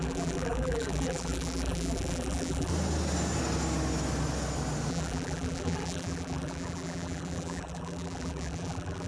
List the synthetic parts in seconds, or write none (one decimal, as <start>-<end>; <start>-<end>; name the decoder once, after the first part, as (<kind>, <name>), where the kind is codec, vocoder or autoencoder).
0.0-2.7 (vocoder, BigVGAN v2); 4.9-9.1